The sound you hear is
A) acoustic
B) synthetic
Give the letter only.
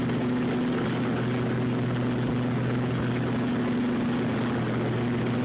A